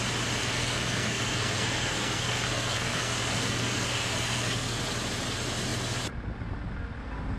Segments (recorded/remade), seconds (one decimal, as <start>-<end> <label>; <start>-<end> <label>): 0.0-0.4 recorded; 0.4-4.8 remade; 4.8-7.4 recorded